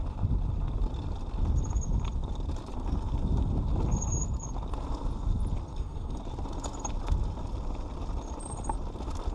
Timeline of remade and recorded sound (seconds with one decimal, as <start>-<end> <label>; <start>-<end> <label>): 0.0-5.7 recorded; 5.7-6.2 remade; 6.2-9.3 recorded